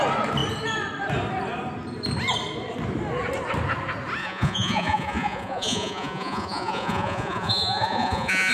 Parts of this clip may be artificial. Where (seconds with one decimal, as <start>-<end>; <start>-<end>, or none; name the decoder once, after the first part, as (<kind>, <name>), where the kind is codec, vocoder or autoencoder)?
4.2-8.5 (vocoder, Vocos)